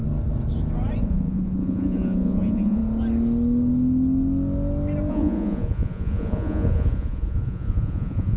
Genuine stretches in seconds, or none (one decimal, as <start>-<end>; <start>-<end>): 0.0-1.0; 2.8-5.1